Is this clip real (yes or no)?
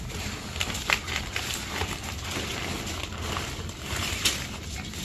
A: yes